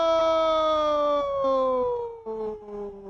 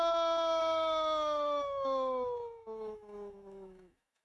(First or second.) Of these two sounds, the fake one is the second